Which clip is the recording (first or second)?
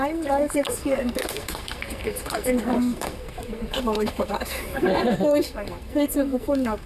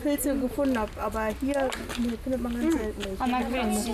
second